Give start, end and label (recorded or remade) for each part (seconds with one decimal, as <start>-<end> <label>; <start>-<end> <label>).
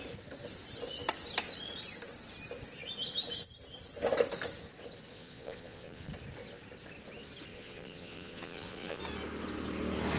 0.0-5.1 recorded; 5.1-6.1 remade; 6.1-7.5 recorded; 7.5-9.0 remade; 9.0-10.2 recorded